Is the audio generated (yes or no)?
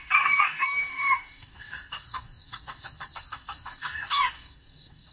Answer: yes